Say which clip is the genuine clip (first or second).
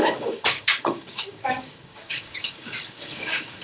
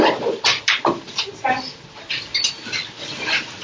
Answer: second